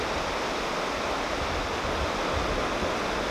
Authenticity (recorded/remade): recorded